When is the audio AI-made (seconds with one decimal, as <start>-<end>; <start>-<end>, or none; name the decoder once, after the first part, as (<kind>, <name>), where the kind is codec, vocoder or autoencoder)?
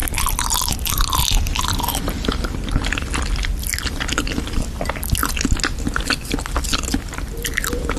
none